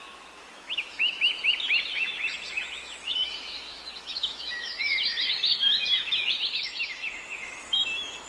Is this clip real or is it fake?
fake